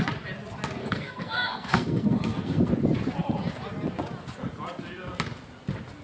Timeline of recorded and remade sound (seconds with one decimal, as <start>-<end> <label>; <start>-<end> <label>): 0.0-0.8 recorded; 0.8-2.7 remade; 2.7-6.0 recorded